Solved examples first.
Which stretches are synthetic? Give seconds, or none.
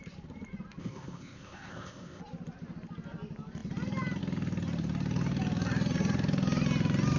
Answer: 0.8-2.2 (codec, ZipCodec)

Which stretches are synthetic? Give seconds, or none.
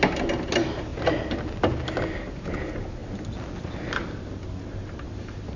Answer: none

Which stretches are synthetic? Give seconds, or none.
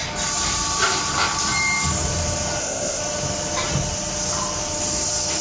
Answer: 2.6-3.0 (codec, ZipCodec)